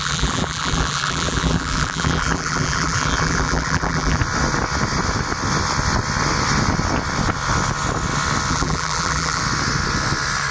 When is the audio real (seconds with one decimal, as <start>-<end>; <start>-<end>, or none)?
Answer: 4.2-8.5; 9.4-10.5